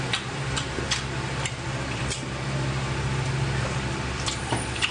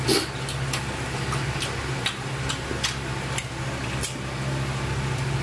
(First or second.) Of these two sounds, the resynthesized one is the first